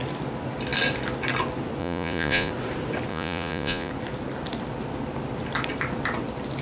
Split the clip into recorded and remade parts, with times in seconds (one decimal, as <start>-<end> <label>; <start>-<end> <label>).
0.0-1.8 recorded; 1.8-2.5 remade; 2.5-3.1 recorded; 3.1-3.9 remade; 3.9-6.6 recorded